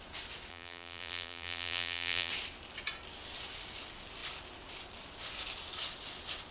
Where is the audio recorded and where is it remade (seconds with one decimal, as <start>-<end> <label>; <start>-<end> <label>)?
0.0-0.5 recorded; 0.5-2.3 remade; 2.3-6.5 recorded